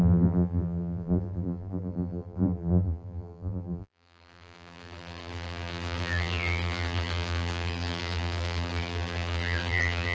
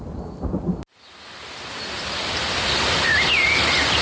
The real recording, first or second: second